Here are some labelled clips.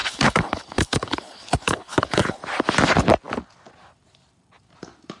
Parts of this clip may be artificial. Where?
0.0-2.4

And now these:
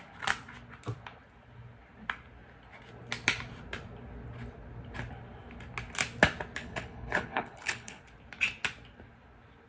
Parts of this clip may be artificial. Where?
6.6-8.0

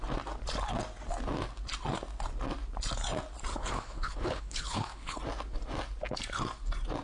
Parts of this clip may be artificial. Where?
3.5-5.2

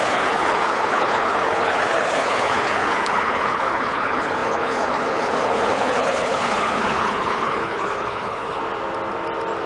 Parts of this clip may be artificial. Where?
0.0-8.6

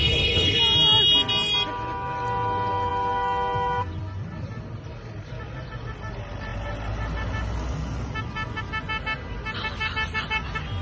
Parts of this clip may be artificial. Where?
0.0-0.6

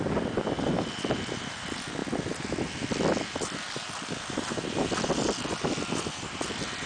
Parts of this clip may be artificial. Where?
none